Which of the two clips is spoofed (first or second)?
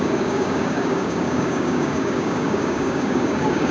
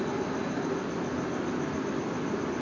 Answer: first